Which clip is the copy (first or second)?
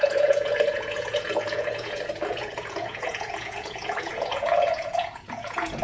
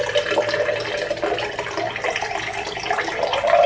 first